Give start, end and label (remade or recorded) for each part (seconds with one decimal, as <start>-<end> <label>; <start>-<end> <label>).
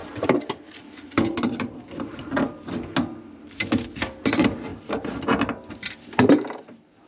0.0-2.2 remade; 2.2-7.1 recorded